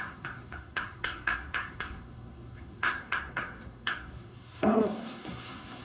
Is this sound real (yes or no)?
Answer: no